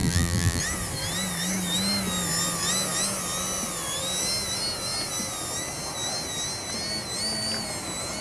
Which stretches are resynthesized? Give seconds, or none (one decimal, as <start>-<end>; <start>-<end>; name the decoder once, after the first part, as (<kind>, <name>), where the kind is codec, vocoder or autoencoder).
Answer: 0.0-0.6 (vocoder, BigVGAN v2)